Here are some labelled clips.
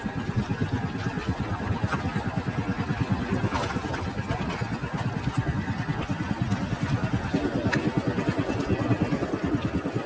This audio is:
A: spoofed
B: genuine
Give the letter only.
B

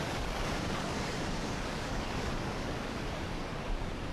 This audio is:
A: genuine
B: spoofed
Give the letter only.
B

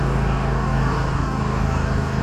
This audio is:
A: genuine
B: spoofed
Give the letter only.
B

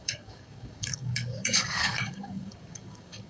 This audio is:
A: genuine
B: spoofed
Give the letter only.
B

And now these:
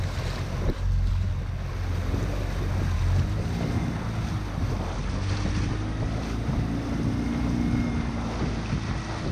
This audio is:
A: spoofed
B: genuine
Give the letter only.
B